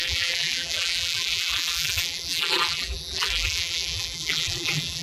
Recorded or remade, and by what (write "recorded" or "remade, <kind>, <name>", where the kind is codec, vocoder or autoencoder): remade, vocoder, BigVGAN v2